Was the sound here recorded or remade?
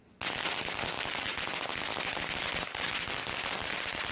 recorded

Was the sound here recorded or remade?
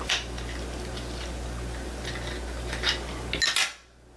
recorded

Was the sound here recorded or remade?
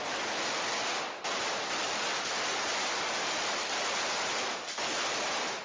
recorded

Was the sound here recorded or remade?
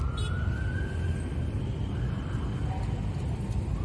recorded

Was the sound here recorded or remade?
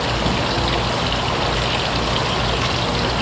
recorded